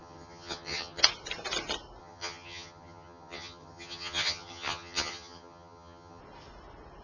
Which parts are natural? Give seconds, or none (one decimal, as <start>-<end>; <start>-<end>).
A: 1.0-2.0; 6.2-7.0